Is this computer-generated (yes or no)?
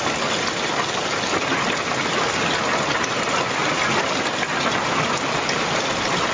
no